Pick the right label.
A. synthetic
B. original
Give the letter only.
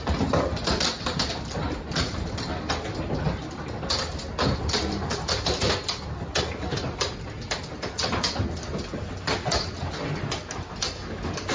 B